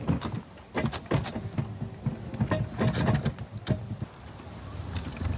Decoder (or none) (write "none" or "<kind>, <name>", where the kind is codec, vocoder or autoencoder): none